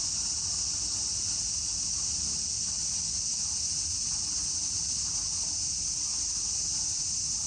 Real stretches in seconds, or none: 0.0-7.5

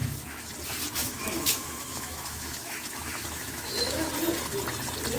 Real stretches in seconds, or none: 0.5-1.0; 4.1-5.2

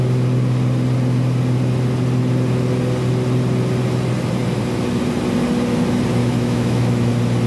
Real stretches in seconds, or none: 0.0-6.2; 7.1-7.5

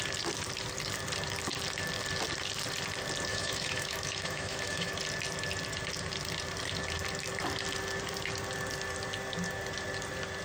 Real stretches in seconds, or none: 0.0-3.3; 4.9-10.4

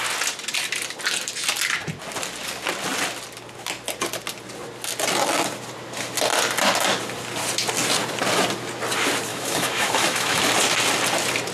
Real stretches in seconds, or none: 0.0-9.3; 10.4-11.5